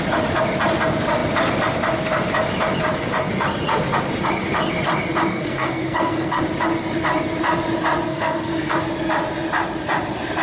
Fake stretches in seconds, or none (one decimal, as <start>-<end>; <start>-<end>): 5.3-6.4; 8.1-8.8